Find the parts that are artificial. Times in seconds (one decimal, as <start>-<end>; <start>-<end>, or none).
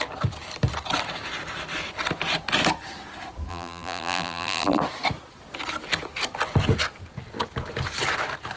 3.5-4.8